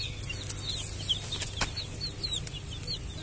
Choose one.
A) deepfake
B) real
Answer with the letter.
B